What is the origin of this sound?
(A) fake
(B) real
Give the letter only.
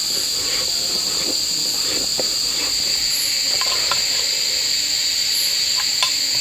B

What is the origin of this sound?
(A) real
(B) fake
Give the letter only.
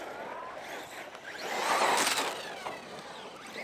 A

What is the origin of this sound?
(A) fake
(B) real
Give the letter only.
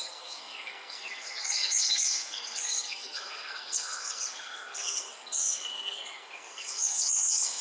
A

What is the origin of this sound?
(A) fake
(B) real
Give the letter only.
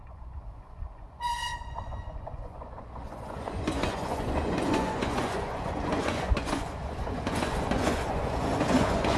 A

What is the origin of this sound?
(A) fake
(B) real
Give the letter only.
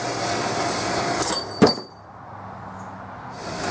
B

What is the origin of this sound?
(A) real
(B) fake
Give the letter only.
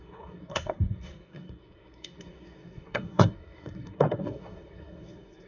B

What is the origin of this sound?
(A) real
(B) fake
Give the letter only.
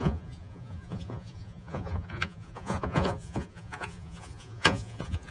B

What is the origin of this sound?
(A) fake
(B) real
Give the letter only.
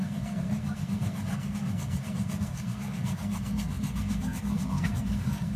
A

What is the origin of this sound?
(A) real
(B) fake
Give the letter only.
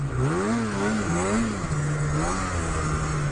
A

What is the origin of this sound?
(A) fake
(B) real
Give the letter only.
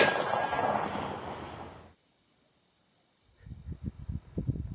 B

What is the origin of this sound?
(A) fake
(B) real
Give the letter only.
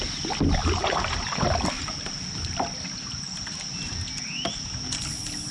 B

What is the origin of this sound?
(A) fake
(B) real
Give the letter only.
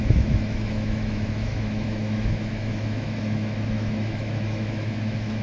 A